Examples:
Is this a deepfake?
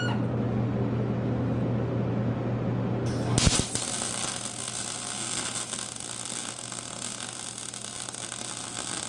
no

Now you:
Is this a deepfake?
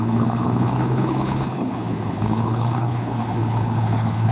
yes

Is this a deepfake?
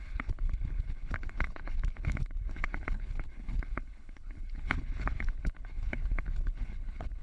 yes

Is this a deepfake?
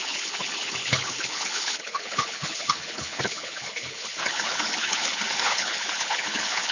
yes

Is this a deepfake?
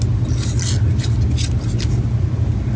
no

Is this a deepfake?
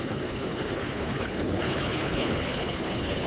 yes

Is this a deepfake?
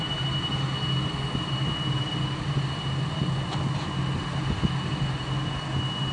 no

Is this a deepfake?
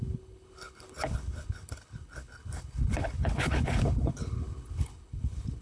yes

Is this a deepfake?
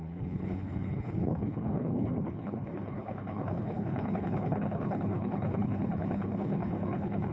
yes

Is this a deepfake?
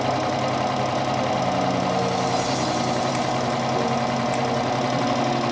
no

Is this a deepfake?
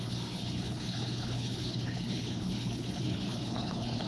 yes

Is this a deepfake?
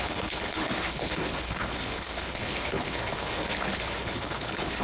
yes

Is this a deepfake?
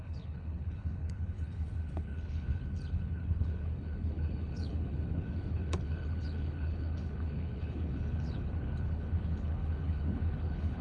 yes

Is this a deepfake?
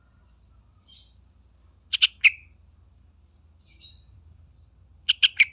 no